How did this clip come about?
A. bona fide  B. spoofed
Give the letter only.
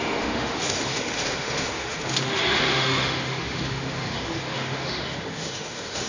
B